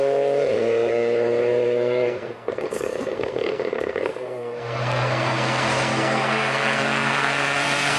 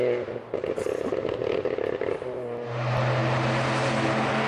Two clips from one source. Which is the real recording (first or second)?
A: second